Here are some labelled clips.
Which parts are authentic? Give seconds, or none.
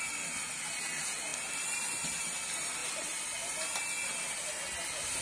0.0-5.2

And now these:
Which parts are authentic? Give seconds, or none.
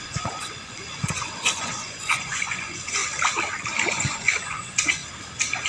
3.0-3.9; 5.0-5.7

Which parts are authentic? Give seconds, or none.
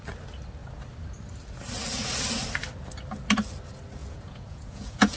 0.0-4.0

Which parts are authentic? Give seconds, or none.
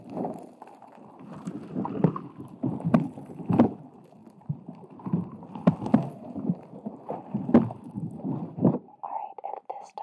0.0-10.0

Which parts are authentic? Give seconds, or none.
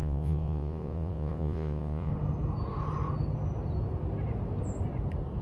2.1-5.4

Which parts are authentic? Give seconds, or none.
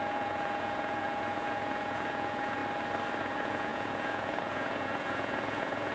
2.6-3.2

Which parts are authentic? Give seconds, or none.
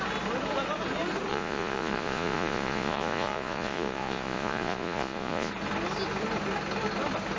0.0-1.3; 5.5-7.4